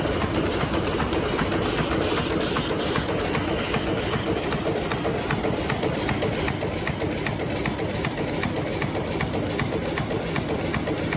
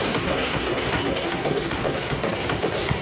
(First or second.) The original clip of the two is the first